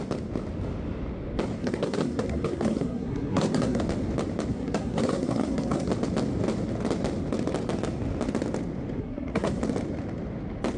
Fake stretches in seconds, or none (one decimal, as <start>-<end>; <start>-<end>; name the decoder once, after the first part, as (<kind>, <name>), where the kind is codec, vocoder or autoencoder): 1.6-3.8 (codec, SNAC); 4.5-5.9; 9.0-9.6